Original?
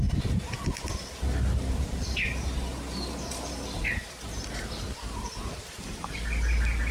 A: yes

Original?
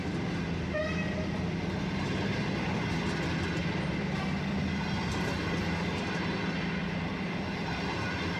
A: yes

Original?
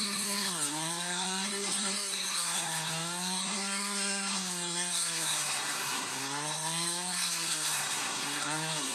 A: no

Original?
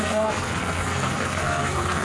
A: no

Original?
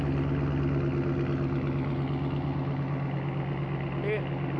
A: yes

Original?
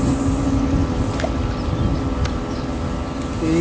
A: yes